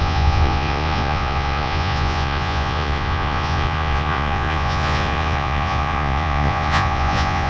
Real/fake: fake